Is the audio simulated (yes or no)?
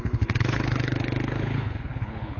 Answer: yes